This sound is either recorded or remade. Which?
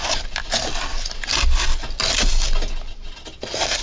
recorded